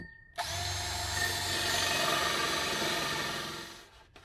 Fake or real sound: real